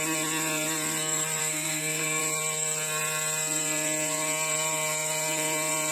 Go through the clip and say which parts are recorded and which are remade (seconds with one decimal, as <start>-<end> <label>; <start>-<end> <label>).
0.0-1.4 recorded; 1.4-2.2 remade; 2.2-5.9 recorded

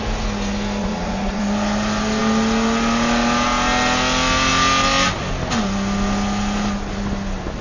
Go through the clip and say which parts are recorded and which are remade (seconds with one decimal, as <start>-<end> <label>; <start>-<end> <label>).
0.0-0.8 recorded; 0.8-1.4 remade; 1.4-7.6 recorded

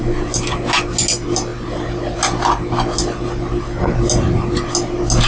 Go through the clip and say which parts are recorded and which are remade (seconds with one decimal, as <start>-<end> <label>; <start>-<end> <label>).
0.0-5.3 recorded

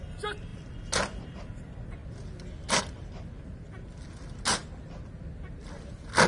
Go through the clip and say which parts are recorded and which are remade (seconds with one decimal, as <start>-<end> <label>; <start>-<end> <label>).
0.0-6.3 recorded

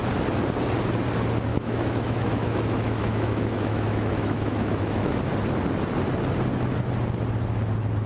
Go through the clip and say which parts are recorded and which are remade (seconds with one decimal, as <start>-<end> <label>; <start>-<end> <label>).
0.0-1.5 recorded; 1.5-5.2 remade; 5.2-8.1 recorded

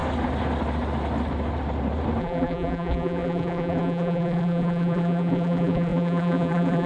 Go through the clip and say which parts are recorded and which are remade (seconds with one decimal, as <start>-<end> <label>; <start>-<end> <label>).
0.0-2.2 recorded; 2.2-6.9 remade